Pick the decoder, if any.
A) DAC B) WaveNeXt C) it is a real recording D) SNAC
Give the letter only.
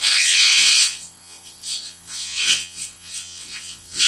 B